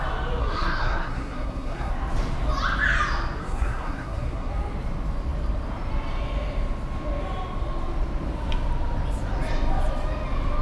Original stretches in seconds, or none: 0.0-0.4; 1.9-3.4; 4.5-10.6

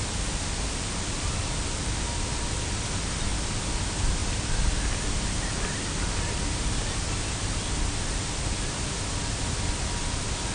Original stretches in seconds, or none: 0.0-10.5

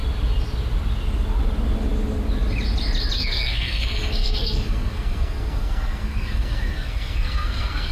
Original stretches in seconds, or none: 0.0-3.2

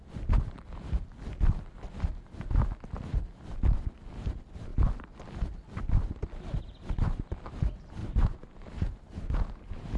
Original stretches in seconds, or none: 0.0-8.0

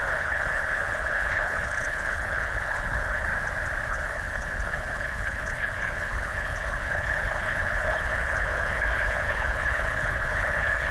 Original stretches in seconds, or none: 3.3-3.9

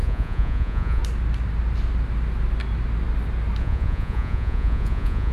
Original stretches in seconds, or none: 1.0-3.6